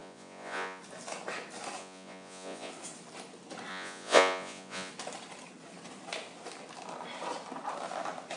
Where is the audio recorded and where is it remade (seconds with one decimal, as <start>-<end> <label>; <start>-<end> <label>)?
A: 0.0-0.8 remade; 0.8-1.8 recorded; 1.8-2.7 remade; 2.7-3.7 recorded; 3.7-4.9 remade; 4.9-8.4 recorded